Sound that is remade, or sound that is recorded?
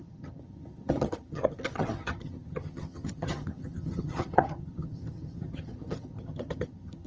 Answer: remade